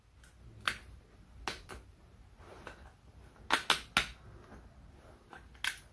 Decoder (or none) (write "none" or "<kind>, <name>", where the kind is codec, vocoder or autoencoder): none